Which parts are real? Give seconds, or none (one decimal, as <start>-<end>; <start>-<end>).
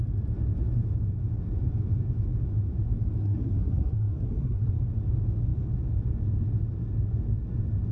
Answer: 0.0-3.2; 4.7-7.9